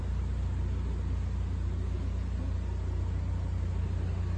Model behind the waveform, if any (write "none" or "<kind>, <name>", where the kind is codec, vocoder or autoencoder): none